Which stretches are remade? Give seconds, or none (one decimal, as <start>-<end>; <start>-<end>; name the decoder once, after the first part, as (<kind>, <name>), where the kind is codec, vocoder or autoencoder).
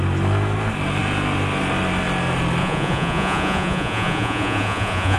2.6-5.2 (vocoder, Vocos)